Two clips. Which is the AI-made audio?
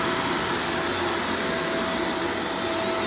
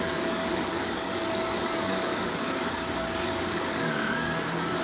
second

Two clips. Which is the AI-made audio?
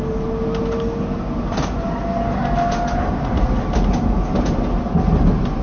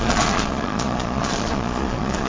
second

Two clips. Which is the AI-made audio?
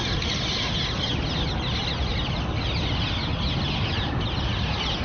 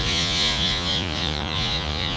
second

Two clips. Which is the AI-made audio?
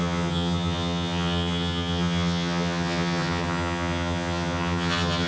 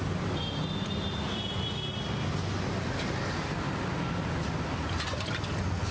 first